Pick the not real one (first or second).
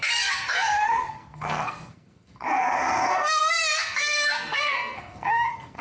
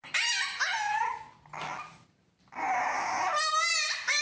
first